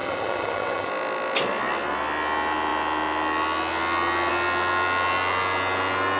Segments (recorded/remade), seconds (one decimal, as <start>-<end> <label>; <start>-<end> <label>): 0.0-0.9 remade; 0.9-6.2 recorded